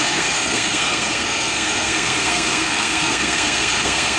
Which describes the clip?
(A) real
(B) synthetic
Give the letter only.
B